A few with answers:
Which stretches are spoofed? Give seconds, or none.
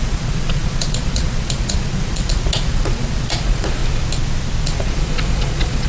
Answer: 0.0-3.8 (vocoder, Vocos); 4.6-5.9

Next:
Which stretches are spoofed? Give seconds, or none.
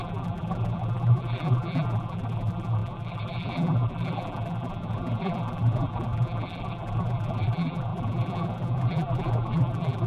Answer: 0.0-10.1 (vocoder, BigVGAN v2)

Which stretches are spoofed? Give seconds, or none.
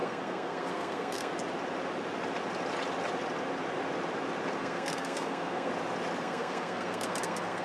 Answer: 0.0-1.3 (codec, SNAC); 4.6-5.7; 6.2-7.6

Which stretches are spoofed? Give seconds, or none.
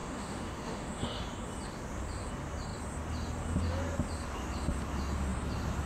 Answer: 0.0-1.2 (autoencoder, DAC-VAE)